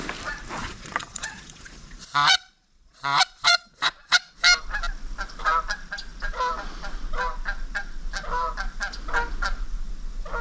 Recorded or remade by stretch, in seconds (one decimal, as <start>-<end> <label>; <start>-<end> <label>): 0.0-0.6 recorded; 0.6-4.3 remade; 4.3-10.4 recorded